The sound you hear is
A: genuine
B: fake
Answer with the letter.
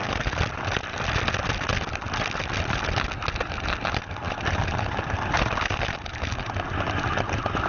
A